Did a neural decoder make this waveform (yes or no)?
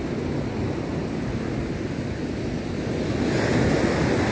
no